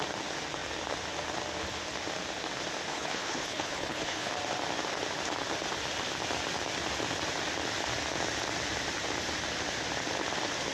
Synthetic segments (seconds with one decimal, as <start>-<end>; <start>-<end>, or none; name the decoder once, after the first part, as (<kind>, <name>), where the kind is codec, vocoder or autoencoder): 2.9-4.3 (codec, HILCodec)